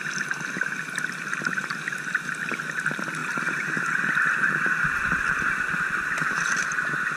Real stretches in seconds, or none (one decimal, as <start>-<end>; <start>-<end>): 0.0-3.2; 4.0-7.2